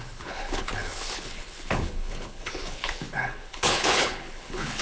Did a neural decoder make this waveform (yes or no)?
yes